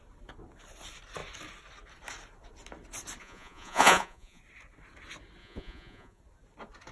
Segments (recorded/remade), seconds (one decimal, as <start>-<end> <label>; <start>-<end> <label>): 0.0-3.2 recorded; 3.2-4.4 remade; 4.4-5.4 recorded; 5.4-6.2 remade; 6.2-6.9 recorded